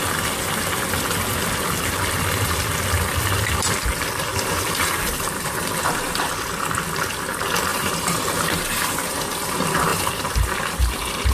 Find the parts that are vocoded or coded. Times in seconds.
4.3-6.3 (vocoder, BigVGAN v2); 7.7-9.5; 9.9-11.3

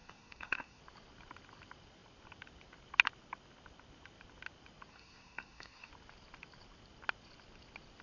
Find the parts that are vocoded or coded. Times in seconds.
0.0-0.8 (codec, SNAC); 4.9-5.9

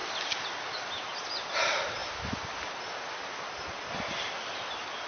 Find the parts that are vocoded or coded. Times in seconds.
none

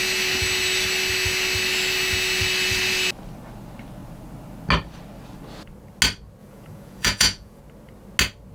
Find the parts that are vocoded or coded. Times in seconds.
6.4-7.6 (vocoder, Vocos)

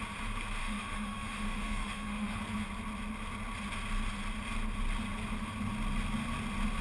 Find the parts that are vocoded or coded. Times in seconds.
0.6-2.4 (autoencoder, DAC-VAE)

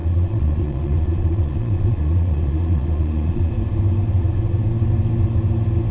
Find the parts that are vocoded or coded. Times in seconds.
0.0-3.5 (vocoder, Vocos)

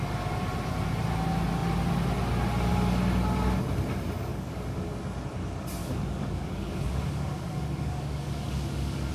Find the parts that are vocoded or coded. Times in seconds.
4.3-5.0 (codec, DAC); 5.8-9.1